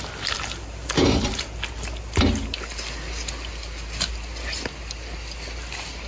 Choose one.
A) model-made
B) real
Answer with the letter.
B